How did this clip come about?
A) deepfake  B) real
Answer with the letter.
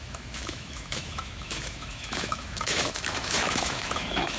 A